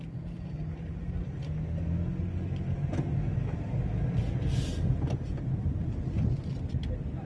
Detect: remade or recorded recorded